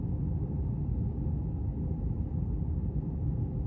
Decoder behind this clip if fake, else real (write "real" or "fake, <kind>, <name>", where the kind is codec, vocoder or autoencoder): real